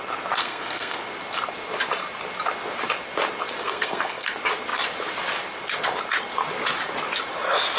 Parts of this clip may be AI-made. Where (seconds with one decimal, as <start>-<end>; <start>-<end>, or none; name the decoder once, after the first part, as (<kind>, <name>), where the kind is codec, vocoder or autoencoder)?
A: 0.4-1.0 (codec, SNAC); 3.6-4.3